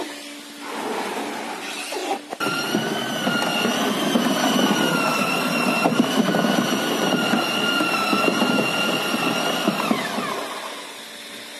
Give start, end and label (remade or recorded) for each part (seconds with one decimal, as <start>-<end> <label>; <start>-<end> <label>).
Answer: 0.0-2.0 recorded; 2.0-2.6 remade; 2.6-11.6 recorded